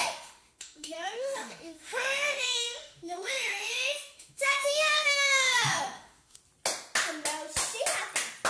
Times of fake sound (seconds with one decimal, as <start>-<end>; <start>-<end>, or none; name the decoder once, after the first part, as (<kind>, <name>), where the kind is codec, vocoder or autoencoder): 0.0-6.4 (autoencoder, DAC-VAE)